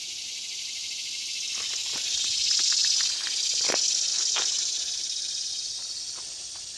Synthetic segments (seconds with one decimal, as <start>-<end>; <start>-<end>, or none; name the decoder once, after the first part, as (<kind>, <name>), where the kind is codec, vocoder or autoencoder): 4.1-5.8 (vocoder, BigVGAN v2)